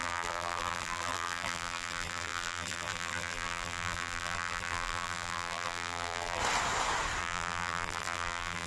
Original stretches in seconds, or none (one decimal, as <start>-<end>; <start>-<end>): 6.4-7.2